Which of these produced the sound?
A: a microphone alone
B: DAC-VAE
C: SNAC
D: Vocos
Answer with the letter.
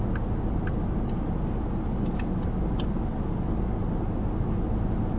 A